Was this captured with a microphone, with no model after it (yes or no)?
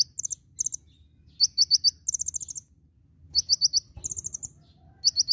yes